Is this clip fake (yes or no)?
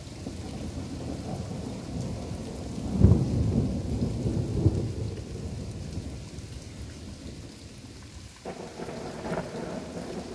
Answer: no